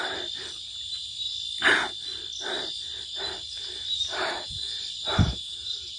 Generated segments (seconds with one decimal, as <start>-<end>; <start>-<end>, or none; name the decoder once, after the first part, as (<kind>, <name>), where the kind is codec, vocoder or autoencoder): none